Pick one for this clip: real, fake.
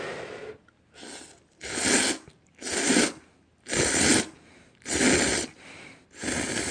real